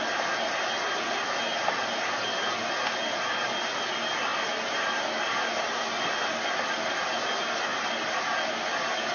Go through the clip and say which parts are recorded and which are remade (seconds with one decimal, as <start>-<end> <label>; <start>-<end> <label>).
0.0-9.1 recorded